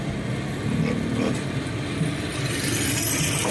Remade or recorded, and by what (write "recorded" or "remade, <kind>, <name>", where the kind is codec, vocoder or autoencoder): recorded